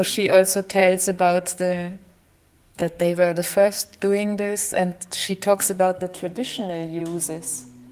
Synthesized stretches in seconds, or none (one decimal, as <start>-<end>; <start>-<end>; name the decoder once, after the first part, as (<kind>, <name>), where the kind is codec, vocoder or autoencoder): 0.0-7.0 (codec, SNAC)